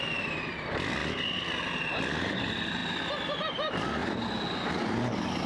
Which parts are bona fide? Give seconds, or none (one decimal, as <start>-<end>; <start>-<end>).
1.0-1.8; 2.8-3.4; 4.0-4.8